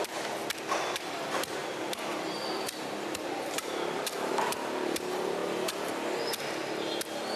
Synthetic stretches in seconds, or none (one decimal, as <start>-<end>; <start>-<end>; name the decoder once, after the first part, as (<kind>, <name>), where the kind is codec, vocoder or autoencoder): 1.6-4.3 (vocoder, BigVGAN v2)